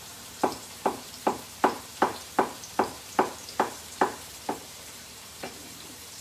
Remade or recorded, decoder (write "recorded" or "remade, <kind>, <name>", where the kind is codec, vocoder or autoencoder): remade, vocoder, BigVGAN v2